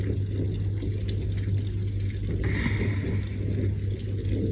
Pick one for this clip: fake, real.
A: real